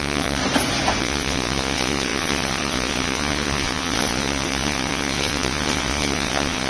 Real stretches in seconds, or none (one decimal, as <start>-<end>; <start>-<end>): 0.4-1.0